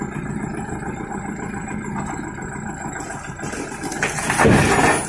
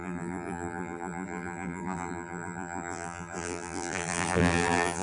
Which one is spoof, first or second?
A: second